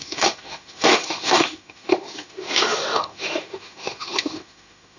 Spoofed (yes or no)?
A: yes